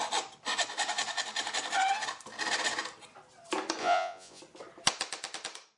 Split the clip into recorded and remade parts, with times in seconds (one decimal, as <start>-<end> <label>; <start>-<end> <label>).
0.0-3.8 recorded; 3.8-4.4 remade; 4.4-5.8 recorded